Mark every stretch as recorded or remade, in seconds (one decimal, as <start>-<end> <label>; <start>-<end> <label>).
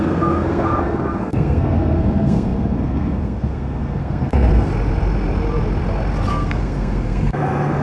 0.0-4.7 remade; 4.7-6.3 recorded; 6.3-7.8 remade